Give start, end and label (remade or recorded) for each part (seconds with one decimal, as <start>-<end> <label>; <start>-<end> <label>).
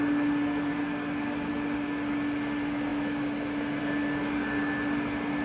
0.0-0.7 recorded; 0.7-1.5 remade; 1.5-5.4 recorded